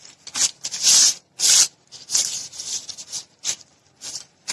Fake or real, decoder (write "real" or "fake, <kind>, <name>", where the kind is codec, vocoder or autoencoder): real